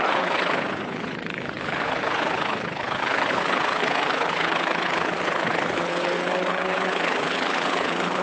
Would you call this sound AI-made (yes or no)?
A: yes